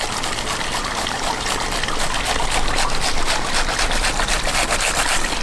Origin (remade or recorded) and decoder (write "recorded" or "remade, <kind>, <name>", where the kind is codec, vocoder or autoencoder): recorded